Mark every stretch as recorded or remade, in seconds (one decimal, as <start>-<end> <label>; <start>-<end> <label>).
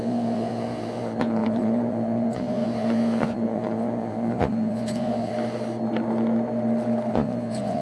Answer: 0.0-5.3 remade; 5.3-7.1 recorded; 7.1-7.8 remade